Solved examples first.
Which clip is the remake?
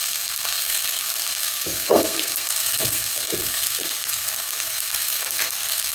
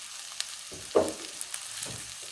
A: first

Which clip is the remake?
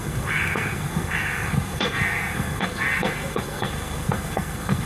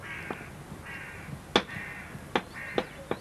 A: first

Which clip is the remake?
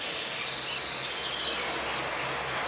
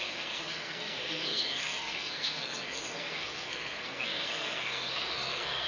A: second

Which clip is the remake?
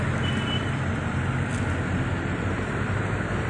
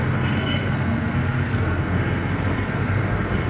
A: second